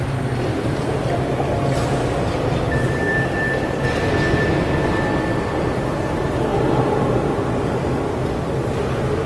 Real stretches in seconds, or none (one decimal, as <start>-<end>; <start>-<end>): 0.0-9.3